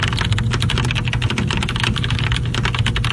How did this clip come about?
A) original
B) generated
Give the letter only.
A